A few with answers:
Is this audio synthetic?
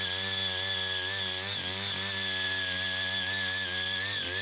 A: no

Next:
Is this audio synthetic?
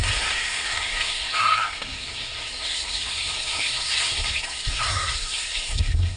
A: yes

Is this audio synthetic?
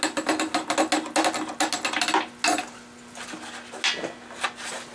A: no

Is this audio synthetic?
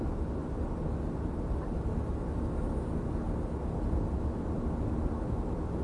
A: no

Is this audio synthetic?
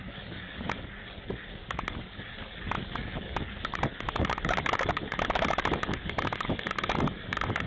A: yes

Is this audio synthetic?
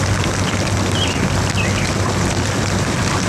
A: yes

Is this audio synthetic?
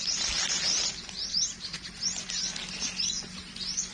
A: no